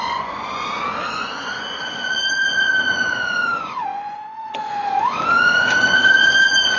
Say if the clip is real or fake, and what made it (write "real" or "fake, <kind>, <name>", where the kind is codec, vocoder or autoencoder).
fake, vocoder, Vocos